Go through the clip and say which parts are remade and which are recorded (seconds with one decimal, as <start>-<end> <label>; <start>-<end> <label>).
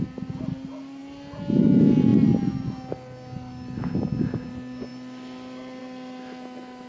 0.0-6.9 recorded